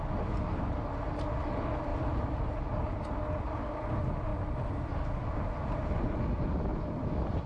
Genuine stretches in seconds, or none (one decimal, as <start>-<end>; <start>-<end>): 0.0-1.9; 2.5-4.3; 5.6-6.7